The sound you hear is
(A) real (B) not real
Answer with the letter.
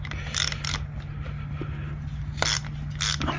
A